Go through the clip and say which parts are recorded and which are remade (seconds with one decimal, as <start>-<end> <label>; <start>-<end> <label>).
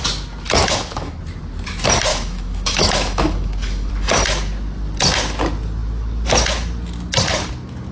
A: 0.0-0.6 recorded; 0.6-1.2 remade; 1.2-2.1 recorded; 2.1-3.9 remade; 3.9-7.9 recorded